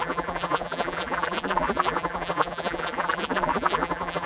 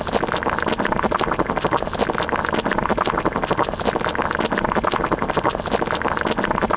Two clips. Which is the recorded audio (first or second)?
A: second